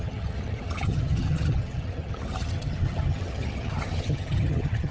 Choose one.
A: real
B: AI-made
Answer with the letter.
B